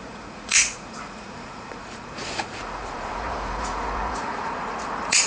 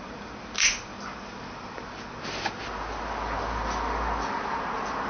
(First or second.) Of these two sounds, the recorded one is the second